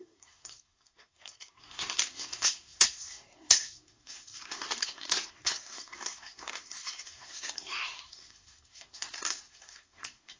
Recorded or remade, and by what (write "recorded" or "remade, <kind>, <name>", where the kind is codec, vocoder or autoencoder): remade, codec, SNAC